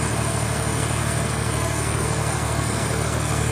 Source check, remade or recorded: remade